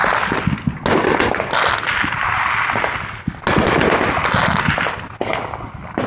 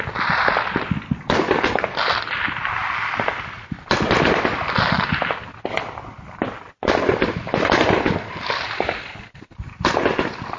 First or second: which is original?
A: first